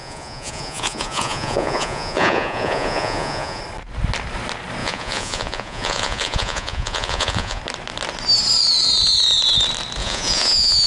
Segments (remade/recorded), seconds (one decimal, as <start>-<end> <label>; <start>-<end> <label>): 0.0-3.6 remade; 3.6-4.8 recorded; 4.8-7.6 remade; 7.6-10.0 recorded; 10.0-10.9 remade